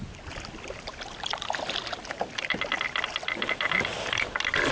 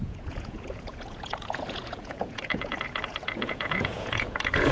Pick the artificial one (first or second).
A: second